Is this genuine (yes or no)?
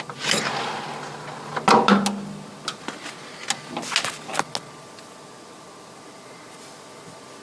yes